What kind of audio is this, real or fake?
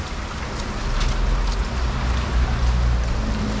real